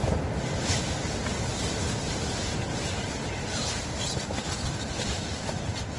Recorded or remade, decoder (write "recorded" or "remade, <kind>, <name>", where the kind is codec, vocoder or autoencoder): recorded